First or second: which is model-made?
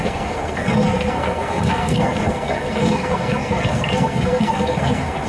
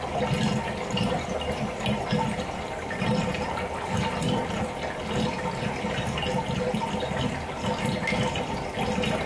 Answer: first